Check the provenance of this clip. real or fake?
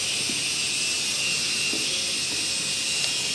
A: real